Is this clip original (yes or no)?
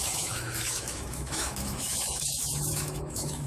no